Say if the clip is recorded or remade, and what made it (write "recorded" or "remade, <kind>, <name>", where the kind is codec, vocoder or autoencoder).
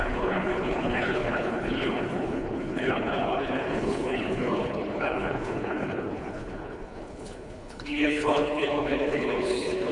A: remade, codec, HILCodec